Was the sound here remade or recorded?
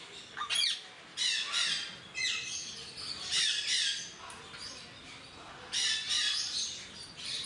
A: recorded